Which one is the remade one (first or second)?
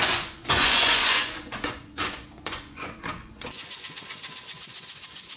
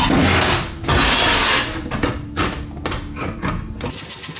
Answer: first